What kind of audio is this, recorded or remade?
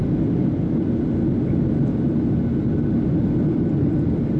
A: recorded